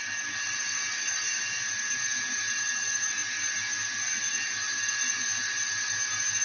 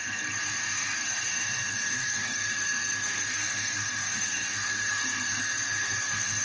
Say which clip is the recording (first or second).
first